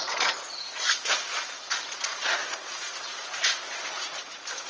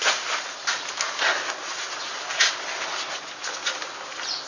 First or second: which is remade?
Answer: first